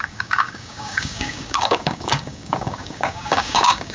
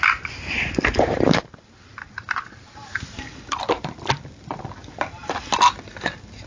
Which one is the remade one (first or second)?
first